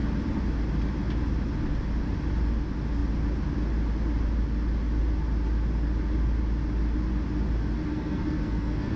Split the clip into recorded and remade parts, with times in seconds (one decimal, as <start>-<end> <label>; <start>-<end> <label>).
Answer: 0.0-7.9 recorded; 7.9-9.0 remade

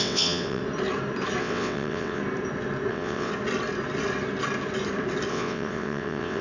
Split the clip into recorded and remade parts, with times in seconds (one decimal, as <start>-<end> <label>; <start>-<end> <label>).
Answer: 0.0-0.6 remade; 0.6-1.4 recorded; 1.4-2.2 remade; 2.2-2.9 recorded; 2.9-3.3 remade; 3.3-5.3 recorded; 5.3-6.4 remade

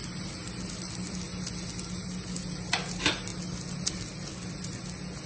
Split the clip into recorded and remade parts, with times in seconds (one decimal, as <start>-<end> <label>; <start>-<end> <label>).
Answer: 0.0-5.3 recorded

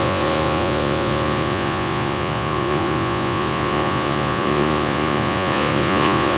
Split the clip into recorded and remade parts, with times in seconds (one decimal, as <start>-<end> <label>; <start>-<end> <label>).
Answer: 0.0-6.4 remade

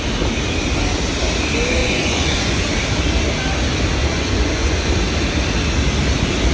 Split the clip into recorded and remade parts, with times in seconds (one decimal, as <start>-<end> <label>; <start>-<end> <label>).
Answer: 0.0-1.8 recorded; 1.8-2.6 remade; 2.6-4.0 recorded; 4.0-4.9 remade; 4.9-6.5 recorded

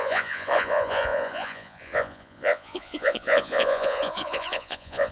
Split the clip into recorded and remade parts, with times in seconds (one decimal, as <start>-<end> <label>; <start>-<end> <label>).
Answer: 0.0-5.1 remade

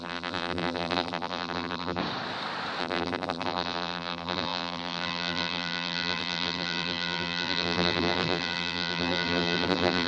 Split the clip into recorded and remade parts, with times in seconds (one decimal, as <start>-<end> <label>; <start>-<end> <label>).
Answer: 0.0-2.0 remade; 2.0-2.8 recorded; 2.8-10.1 remade

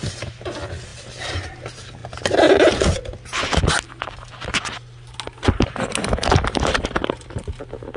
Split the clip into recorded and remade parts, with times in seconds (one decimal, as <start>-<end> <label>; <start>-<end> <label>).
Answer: 0.0-0.9 recorded; 0.9-1.6 remade; 1.6-8.0 recorded